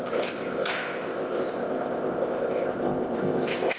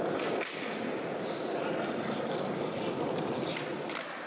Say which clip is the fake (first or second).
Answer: first